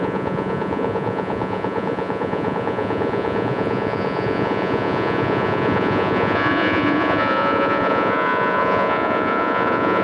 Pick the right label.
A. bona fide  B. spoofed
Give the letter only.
B